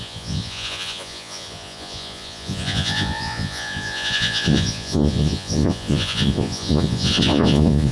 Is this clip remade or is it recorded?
remade